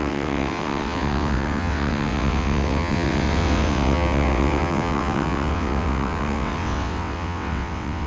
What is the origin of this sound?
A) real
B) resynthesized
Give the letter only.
B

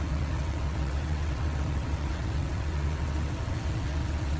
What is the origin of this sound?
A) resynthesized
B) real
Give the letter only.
A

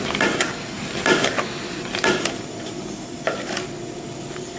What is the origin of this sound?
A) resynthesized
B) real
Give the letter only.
B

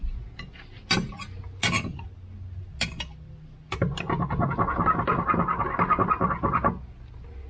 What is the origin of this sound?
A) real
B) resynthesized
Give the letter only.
A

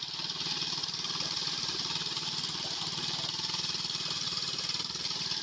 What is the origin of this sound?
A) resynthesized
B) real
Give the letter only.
B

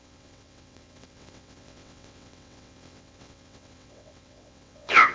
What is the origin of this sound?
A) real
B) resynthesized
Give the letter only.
B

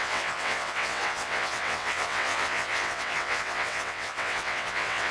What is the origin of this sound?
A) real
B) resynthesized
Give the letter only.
B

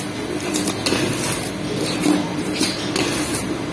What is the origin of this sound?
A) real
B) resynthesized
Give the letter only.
A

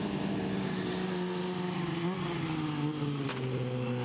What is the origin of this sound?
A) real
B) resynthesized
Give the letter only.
A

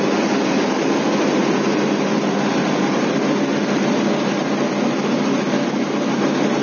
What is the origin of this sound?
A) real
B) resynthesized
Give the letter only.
A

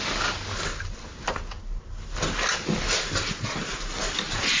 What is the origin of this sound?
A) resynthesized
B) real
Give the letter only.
B